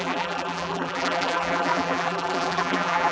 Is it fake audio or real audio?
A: fake